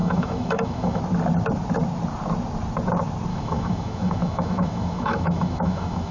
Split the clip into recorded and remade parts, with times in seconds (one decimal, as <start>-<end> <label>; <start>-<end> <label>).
0.0-1.0 remade; 1.0-3.3 recorded; 3.3-6.1 remade